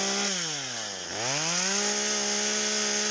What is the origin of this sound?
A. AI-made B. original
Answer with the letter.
B